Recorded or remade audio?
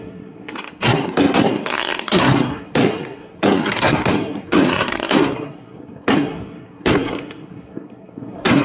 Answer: remade